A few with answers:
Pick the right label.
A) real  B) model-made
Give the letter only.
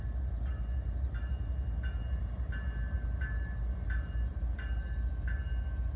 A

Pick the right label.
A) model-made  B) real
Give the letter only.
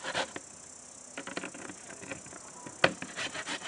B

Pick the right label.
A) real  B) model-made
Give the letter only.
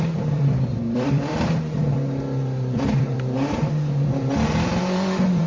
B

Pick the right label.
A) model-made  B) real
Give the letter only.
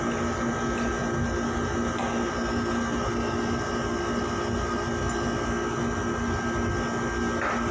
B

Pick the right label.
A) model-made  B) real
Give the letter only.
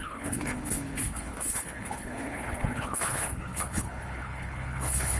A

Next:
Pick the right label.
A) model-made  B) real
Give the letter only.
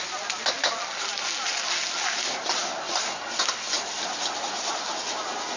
B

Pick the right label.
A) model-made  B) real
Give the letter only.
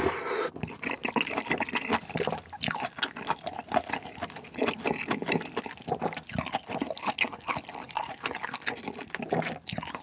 B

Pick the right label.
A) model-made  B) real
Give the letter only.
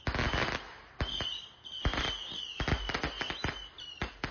B